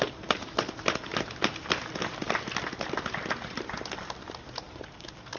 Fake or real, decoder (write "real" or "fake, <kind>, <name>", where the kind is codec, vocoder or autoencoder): real